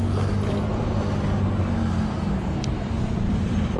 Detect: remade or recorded recorded